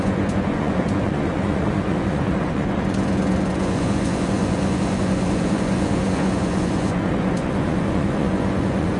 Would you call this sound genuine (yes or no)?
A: no